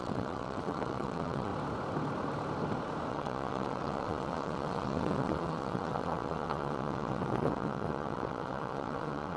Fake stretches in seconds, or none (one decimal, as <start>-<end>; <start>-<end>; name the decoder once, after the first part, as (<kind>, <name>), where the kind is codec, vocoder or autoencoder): 0.0-1.5 (vocoder, WaveNeXt); 3.1-9.4